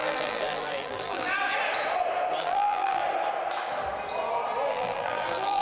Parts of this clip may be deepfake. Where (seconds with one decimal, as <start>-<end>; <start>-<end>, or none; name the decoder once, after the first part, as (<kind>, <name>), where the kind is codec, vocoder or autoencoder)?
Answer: 0.0-1.3 (vocoder, BigVGAN v2); 2.4-3.0; 4.7-5.6